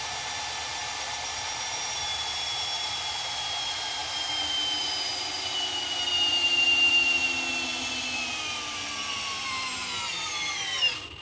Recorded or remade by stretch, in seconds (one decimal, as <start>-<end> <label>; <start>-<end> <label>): 0.0-11.2 recorded

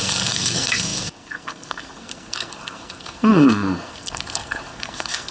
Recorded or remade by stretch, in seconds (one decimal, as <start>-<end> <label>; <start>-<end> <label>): 0.0-5.3 remade

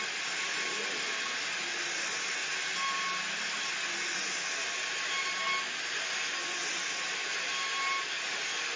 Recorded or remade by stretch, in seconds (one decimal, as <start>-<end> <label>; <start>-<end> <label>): 0.0-8.8 recorded

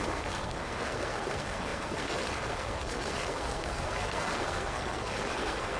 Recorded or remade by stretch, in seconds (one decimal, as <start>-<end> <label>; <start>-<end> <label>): 0.0-5.8 remade

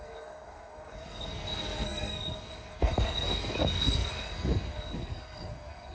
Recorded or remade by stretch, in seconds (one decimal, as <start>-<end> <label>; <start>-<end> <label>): 0.0-5.9 remade

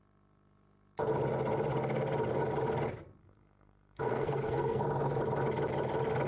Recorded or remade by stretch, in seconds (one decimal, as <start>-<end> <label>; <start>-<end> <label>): 0.0-3.2 recorded; 3.2-4.9 remade; 4.9-6.3 recorded

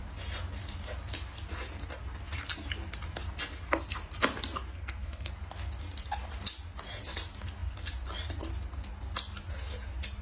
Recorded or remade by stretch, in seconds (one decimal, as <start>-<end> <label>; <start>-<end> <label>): 0.0-4.7 recorded; 4.7-5.3 remade; 5.3-10.2 recorded

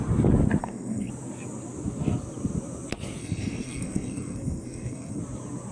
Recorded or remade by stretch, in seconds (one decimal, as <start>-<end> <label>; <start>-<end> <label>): 0.0-0.6 recorded; 0.6-1.1 remade; 1.1-3.2 recorded; 3.2-5.2 remade; 5.2-5.7 recorded